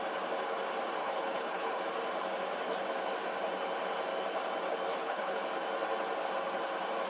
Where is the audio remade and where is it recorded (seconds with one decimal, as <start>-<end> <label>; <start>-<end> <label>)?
0.0-1.0 recorded; 1.0-1.8 remade; 1.8-4.9 recorded; 4.9-5.4 remade; 5.4-7.1 recorded

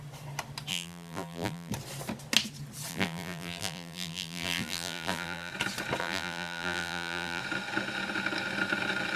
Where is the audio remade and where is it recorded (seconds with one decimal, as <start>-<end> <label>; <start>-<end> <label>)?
0.0-0.7 recorded; 0.7-1.7 remade; 1.7-2.9 recorded; 2.9-5.5 remade; 5.5-6.0 recorded; 6.0-7.4 remade; 7.4-9.2 recorded

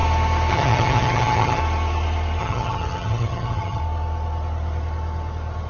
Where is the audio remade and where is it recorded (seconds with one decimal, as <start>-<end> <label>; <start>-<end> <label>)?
0.0-0.5 recorded; 0.5-1.6 remade; 1.6-2.4 recorded; 2.4-3.8 remade; 3.8-5.7 recorded

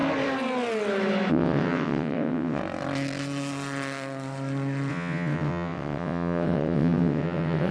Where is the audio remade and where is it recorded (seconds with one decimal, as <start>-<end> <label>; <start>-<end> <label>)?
0.0-1.3 recorded; 1.3-2.6 remade; 2.6-4.9 recorded; 4.9-7.7 remade

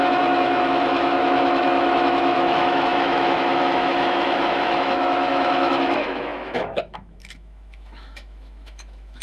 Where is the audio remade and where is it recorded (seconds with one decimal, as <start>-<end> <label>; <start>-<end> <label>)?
0.0-9.2 remade

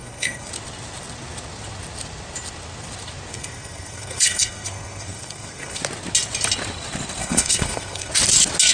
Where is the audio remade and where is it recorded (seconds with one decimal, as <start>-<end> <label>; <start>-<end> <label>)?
0.0-0.5 remade; 0.5-3.3 recorded; 3.3-5.8 remade; 5.8-7.2 recorded; 7.2-8.1 remade; 8.1-8.7 recorded